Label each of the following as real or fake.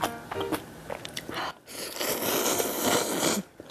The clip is real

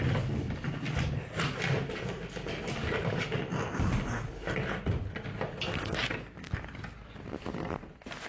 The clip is real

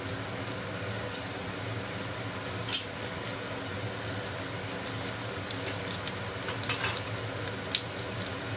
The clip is real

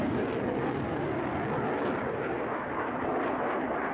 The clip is fake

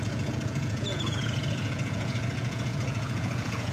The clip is fake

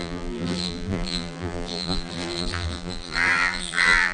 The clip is fake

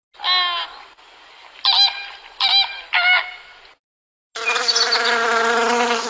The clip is real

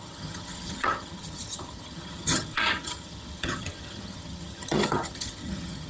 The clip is fake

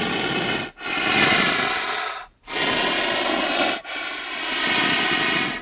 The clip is real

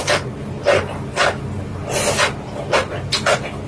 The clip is real